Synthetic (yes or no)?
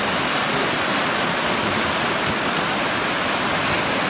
no